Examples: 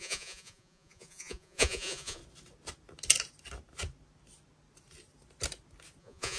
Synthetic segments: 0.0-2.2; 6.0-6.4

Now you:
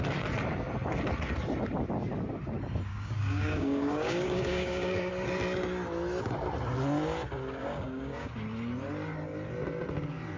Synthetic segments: 2.9-5.1; 7.6-8.3